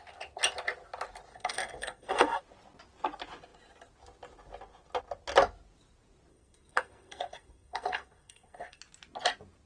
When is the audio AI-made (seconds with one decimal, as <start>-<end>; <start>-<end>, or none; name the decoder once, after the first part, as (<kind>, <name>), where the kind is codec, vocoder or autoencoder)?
1.3-2.4 (codec, SNAC); 6.3-8.8